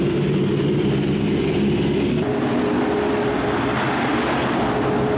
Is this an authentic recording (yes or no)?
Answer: yes